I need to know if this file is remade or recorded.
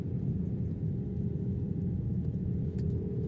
remade